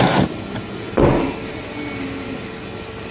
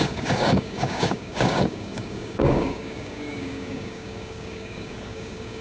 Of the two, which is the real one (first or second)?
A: first